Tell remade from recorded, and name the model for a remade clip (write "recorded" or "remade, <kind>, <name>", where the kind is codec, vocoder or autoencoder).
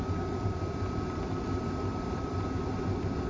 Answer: recorded